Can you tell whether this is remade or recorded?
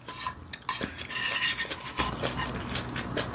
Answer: recorded